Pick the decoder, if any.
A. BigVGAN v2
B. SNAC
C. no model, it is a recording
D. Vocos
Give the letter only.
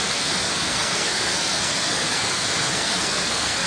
B